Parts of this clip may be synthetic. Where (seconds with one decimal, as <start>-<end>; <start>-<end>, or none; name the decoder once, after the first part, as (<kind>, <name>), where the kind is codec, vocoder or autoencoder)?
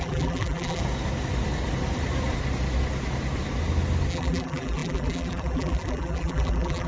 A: 0.0-0.8 (vocoder, BigVGAN v2); 4.1-6.9